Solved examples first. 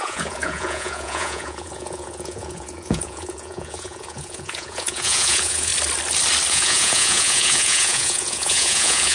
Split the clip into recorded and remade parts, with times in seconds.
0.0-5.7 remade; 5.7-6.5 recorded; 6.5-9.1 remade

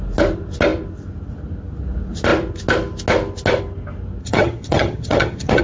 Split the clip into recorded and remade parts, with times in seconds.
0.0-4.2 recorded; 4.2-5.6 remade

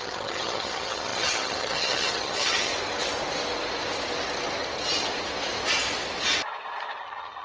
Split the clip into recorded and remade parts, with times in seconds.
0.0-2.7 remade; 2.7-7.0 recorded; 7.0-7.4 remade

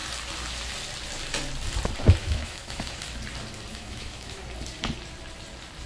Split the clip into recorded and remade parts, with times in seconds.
0.0-2.2 recorded; 2.2-3.0 remade; 3.0-3.7 recorded; 3.7-4.4 remade; 4.4-5.9 recorded